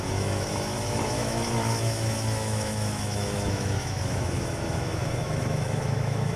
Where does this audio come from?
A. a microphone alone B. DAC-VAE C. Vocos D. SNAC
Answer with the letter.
B